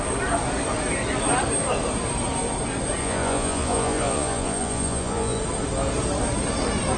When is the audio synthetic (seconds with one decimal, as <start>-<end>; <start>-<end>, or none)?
3.0-5.4